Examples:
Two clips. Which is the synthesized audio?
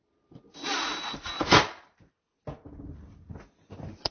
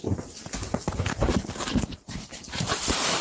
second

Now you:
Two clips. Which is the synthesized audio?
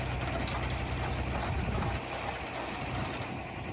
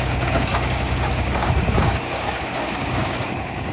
second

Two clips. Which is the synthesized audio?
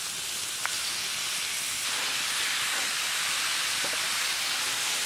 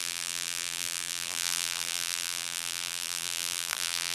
second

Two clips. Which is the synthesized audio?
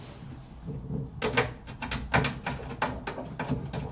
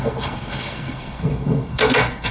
second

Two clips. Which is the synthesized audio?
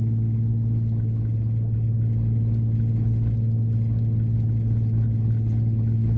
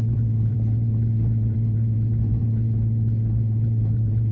second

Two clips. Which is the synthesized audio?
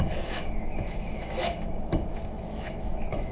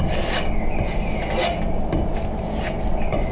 first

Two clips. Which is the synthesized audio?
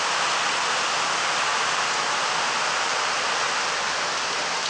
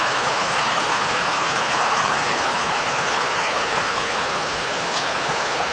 second